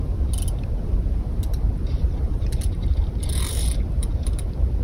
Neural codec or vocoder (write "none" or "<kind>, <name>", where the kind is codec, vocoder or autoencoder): vocoder, BigVGAN v2